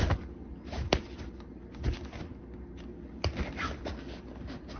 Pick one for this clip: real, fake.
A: real